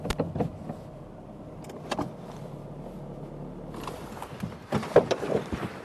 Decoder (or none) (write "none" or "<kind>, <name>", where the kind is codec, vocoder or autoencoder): none